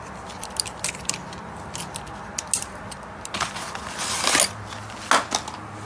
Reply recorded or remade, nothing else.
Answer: recorded